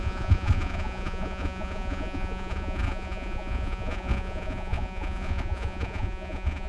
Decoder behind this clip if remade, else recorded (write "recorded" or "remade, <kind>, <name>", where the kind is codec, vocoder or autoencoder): remade, vocoder, Vocos